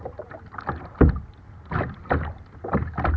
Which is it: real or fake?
real